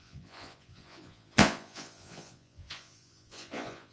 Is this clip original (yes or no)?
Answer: no